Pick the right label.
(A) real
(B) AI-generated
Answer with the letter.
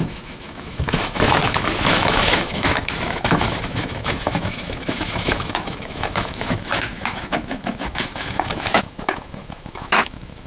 B